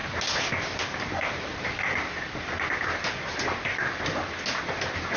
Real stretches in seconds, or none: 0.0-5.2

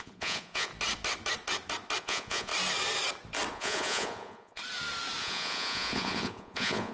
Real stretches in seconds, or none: 0.7-2.0; 2.5-3.5; 4.6-5.2

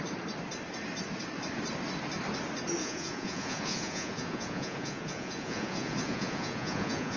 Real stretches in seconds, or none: 0.0-2.8

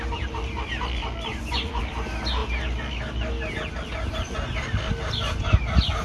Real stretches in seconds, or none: 0.0-1.3; 1.8-6.0

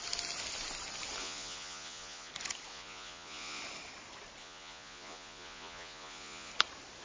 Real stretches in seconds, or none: 0.0-1.2; 2.3-2.7; 3.6-4.4; 6.5-7.0

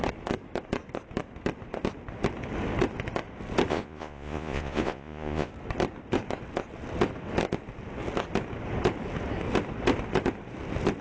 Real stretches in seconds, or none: 0.0-3.7; 5.5-11.0

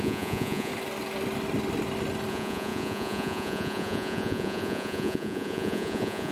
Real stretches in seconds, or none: 0.7-2.3